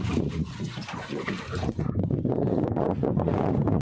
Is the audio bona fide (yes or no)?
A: no